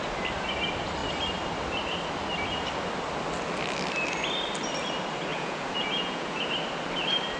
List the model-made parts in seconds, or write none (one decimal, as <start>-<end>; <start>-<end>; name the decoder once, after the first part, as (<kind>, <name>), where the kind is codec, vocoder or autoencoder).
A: 5.3-6.5 (vocoder, Vocos)